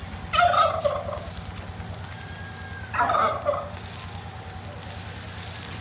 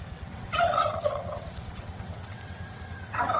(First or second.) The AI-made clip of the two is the second